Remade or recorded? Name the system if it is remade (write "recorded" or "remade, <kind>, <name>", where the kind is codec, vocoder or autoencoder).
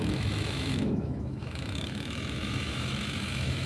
remade, autoencoder, DAC-VAE